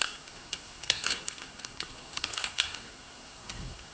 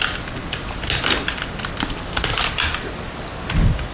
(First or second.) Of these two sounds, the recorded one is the second